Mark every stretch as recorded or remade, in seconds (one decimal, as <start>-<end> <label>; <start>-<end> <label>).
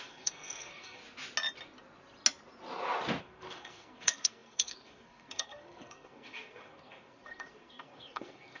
0.0-1.0 remade; 1.0-3.2 recorded; 3.2-8.6 remade